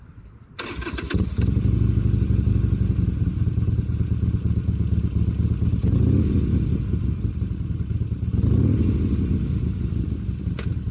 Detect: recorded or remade recorded